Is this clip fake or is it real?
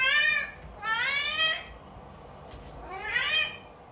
real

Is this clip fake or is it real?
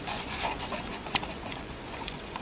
fake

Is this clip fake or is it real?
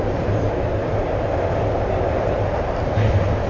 real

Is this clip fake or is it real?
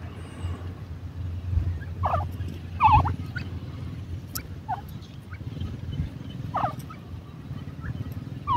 real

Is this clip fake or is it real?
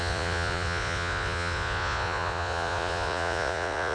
fake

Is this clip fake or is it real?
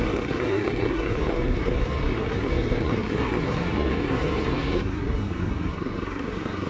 fake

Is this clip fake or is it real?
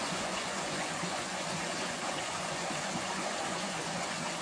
fake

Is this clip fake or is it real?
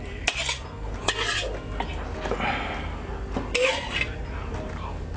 real